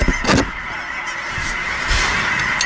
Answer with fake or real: real